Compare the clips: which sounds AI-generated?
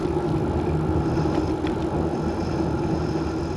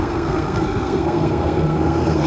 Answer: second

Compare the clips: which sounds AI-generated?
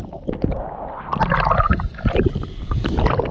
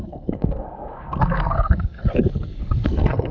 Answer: second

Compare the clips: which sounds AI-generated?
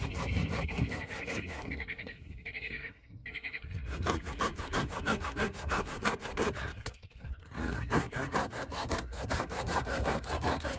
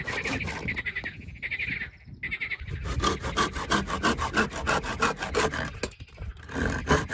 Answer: first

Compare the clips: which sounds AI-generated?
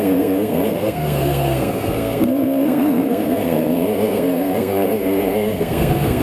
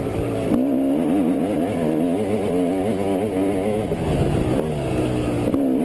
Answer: first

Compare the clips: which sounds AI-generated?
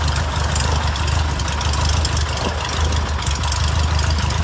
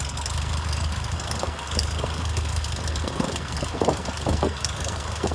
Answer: second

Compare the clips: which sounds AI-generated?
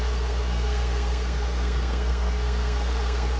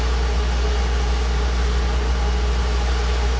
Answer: first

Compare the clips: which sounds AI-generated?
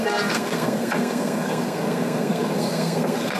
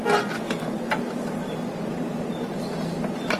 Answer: first